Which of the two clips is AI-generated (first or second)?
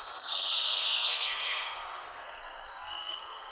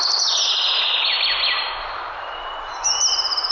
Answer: first